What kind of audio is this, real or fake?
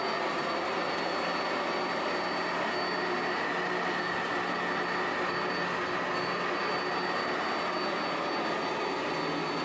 real